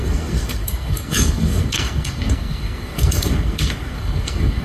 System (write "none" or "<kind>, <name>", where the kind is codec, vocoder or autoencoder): codec, SNAC